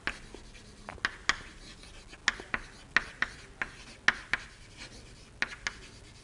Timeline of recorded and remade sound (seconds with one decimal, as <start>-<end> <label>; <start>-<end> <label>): 0.0-6.2 recorded